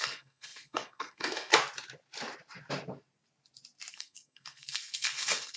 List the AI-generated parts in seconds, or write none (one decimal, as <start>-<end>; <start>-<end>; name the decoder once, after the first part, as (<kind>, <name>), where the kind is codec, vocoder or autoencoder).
0.0-1.5 (codec, SNAC); 3.9-5.6